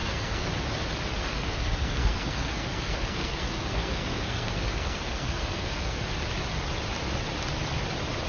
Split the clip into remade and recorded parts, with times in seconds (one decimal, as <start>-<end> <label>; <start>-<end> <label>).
0.0-0.5 remade; 0.5-1.2 recorded; 1.2-6.1 remade; 6.1-8.3 recorded